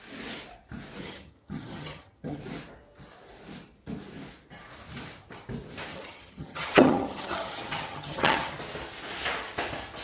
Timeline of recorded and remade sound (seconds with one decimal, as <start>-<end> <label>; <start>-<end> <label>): 0.0-1.0 recorded; 1.0-2.4 remade; 2.4-5.9 recorded; 5.9-8.5 remade; 8.5-10.0 recorded